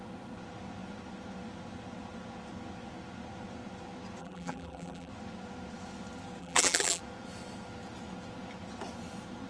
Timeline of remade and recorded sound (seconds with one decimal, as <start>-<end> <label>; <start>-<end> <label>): 0.0-4.2 recorded; 4.2-5.1 remade; 5.1-6.4 recorded; 6.4-7.0 remade; 7.0-9.5 recorded